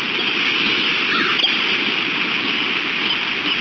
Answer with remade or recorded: recorded